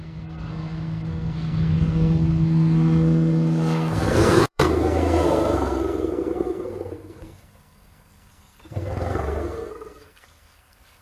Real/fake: fake